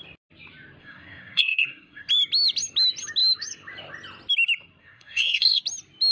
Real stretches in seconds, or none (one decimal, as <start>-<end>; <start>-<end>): 0.0-0.8; 2.1-4.8; 5.6-6.1